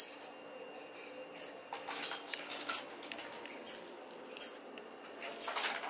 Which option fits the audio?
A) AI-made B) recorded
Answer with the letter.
B